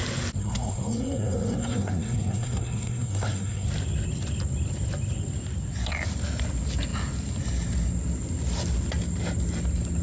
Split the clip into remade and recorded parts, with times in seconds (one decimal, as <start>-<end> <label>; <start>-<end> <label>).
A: 0.0-0.4 recorded; 0.4-3.7 remade; 3.7-10.0 recorded